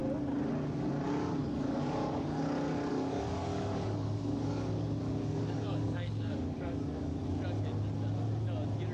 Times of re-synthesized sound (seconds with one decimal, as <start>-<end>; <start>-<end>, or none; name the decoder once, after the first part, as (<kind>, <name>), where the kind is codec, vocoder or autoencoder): 1.4-2.4 (codec, DAC); 2.9-7.2